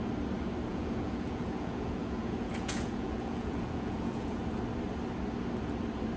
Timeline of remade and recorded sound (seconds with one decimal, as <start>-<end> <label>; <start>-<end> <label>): 0.0-0.7 recorded; 0.7-4.4 remade; 4.4-6.2 recorded